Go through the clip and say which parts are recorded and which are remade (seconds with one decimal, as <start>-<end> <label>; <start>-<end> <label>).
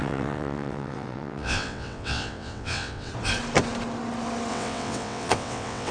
0.0-3.1 remade; 3.1-4.5 recorded; 4.5-5.9 remade